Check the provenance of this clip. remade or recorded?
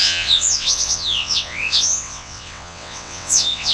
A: remade